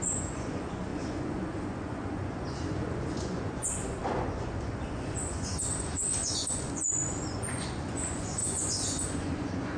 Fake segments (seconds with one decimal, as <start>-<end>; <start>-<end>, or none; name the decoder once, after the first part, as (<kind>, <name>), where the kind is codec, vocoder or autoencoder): 0.0-9.8 (vocoder, Vocos)